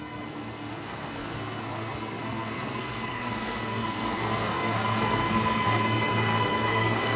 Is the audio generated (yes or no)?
yes